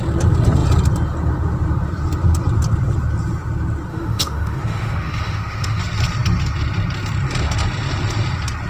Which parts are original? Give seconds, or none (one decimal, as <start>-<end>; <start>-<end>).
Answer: 0.0-3.9; 5.8-8.7